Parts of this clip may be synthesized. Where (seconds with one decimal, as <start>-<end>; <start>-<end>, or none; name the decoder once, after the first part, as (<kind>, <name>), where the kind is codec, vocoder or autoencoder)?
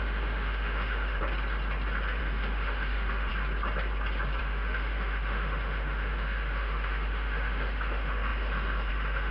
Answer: 0.0-1.2 (autoencoder, DAC-VAE); 2.2-3.3; 4.4-9.3